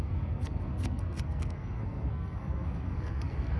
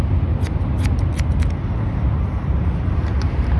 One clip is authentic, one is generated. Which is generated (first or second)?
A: first